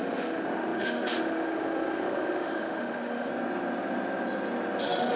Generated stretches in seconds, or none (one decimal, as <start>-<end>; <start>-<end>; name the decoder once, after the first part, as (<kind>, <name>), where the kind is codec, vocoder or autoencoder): 0.0-3.3 (autoencoder, DAC-VAE); 4.8-5.2